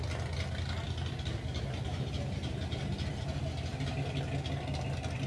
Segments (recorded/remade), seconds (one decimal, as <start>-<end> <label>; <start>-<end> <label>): 0.0-1.9 recorded; 1.9-2.8 remade; 2.8-5.3 recorded